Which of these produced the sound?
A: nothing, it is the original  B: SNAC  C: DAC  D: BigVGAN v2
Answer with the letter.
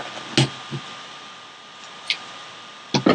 A